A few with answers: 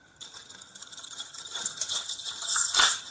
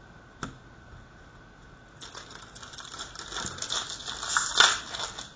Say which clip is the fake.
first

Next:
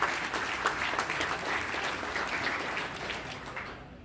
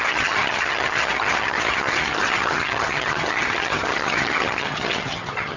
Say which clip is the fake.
second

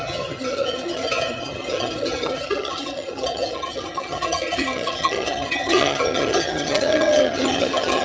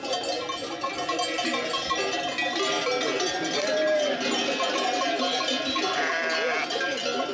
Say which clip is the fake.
first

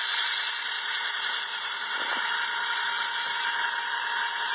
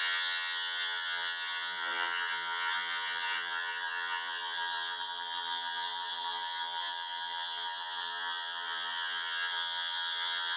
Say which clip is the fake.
second